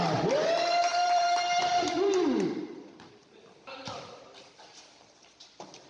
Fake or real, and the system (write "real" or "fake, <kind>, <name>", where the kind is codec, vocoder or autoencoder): fake, vocoder, BigVGAN v2